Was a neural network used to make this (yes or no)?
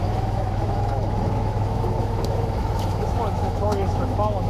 yes